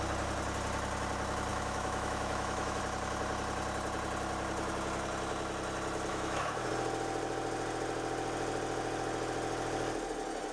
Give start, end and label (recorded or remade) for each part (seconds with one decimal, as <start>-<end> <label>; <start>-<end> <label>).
0.0-1.5 recorded; 1.5-2.8 remade; 2.8-6.1 recorded; 6.1-6.7 remade; 6.7-10.5 recorded